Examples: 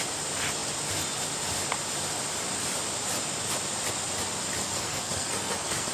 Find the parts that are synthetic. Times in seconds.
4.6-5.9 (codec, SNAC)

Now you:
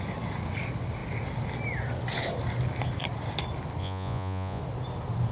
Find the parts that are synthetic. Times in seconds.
3.8-4.6 (vocoder, Vocos)